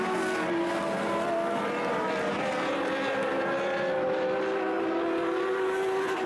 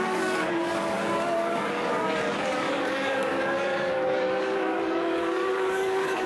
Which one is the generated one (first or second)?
second